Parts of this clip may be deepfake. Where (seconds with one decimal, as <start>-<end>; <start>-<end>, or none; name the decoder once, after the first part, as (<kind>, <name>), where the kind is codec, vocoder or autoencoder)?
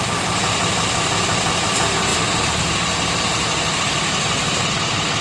none